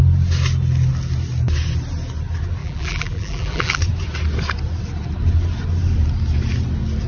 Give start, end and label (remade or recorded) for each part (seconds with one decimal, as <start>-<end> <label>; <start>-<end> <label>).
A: 0.0-2.6 recorded; 2.6-3.8 remade; 3.8-7.1 recorded